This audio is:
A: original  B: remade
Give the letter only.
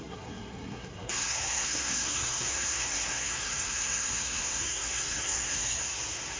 B